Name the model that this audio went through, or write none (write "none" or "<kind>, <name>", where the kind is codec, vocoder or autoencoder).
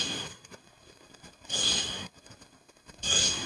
codec, SNAC